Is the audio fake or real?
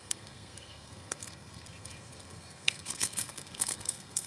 fake